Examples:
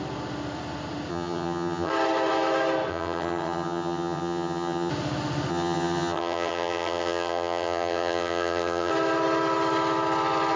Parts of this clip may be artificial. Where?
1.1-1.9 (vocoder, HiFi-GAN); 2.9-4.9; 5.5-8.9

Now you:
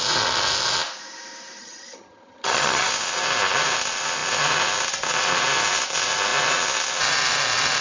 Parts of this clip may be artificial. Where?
1.6-2.9 (vocoder, HiFi-GAN)